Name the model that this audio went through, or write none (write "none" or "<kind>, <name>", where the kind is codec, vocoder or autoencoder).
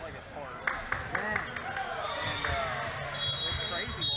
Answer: none